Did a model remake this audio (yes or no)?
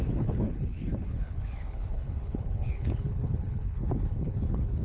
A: yes